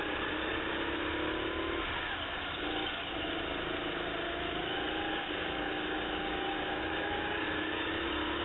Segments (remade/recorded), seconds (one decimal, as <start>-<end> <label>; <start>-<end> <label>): 0.0-5.1 recorded; 5.1-7.9 remade; 7.9-8.4 recorded